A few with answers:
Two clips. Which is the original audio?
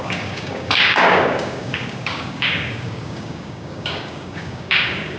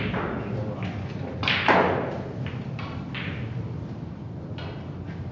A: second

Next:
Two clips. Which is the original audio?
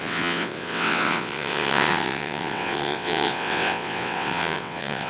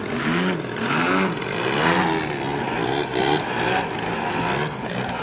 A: second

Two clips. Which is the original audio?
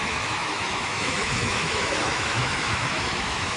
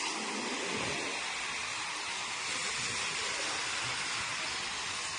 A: second